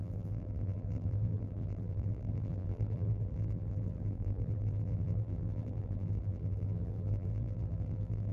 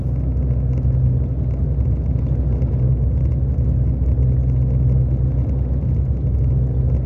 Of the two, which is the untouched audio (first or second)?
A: second